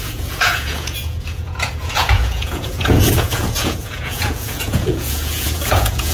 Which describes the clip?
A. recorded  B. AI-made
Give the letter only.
B